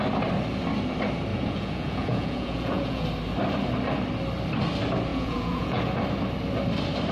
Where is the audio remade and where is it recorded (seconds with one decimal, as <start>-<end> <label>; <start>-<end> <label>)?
0.0-1.3 recorded; 1.3-3.0 remade; 3.0-5.1 recorded; 5.1-5.8 remade; 5.8-7.1 recorded